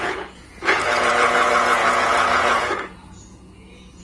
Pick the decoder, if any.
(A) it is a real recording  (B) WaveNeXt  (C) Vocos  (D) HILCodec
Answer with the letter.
C